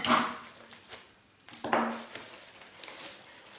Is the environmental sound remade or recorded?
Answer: recorded